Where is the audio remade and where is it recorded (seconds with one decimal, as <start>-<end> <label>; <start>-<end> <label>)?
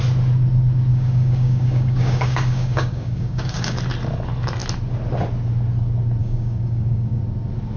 0.0-0.9 recorded; 0.9-3.8 remade; 3.8-6.2 recorded; 6.2-7.2 remade; 7.2-7.8 recorded